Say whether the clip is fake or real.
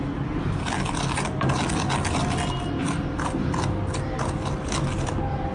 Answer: real